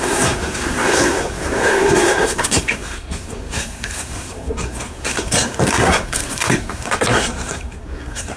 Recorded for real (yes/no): no